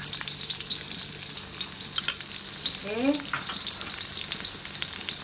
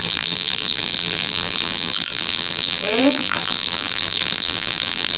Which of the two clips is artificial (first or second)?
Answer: second